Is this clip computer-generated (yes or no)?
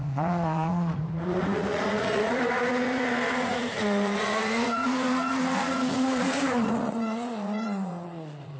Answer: yes